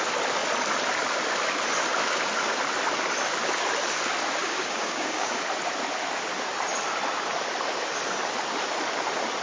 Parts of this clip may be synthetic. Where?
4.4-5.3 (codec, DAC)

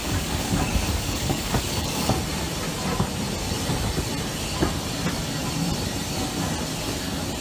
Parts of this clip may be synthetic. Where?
0.0-2.1 (codec, DAC)

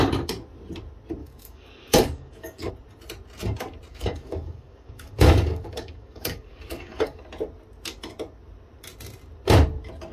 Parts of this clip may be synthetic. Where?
1.2-2.7 (codec, DAC); 3.9-7.2

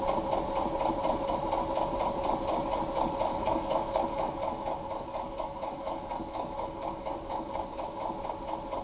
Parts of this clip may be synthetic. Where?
3.3-8.0 (codec, DAC)

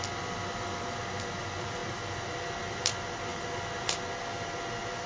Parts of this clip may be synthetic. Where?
none

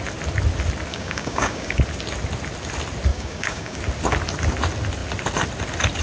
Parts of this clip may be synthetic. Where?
0.9-1.8 (codec, DAC); 3.1-3.8

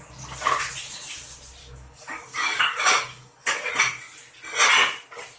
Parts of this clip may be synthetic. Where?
1.6-3.7 (codec, DAC)

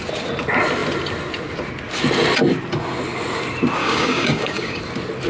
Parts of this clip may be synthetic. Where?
3.8-4.8 (codec, DAC)